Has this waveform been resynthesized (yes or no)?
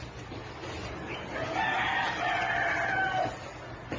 no